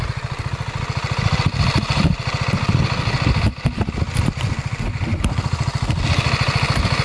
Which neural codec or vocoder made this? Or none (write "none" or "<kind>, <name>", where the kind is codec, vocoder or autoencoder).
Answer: none